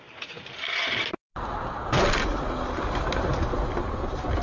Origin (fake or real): real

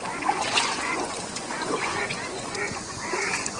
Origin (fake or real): fake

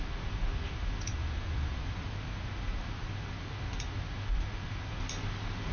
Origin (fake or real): real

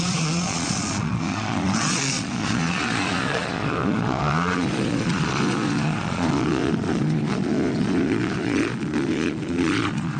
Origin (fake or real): fake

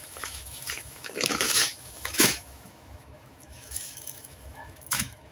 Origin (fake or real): fake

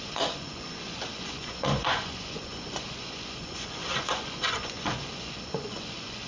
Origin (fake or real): fake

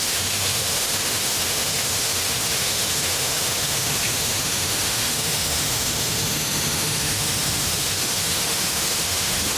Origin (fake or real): fake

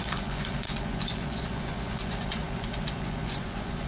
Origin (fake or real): fake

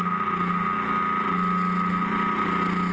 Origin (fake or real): real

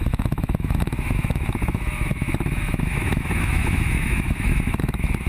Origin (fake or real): fake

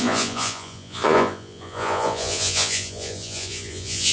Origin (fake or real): fake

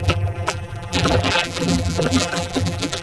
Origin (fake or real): fake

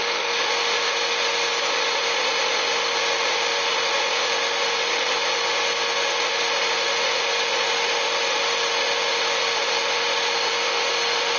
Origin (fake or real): fake